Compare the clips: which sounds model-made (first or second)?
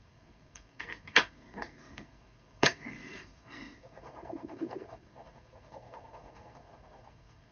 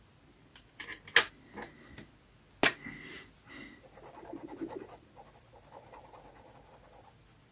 first